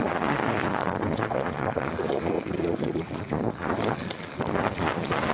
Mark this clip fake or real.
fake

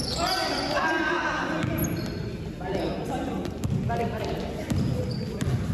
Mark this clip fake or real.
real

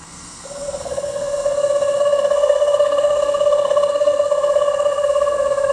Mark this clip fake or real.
fake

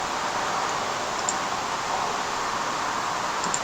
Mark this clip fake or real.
real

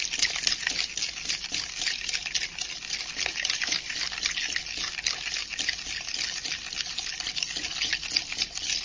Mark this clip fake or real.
real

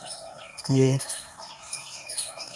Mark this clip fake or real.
fake